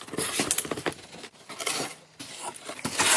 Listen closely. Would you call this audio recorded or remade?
recorded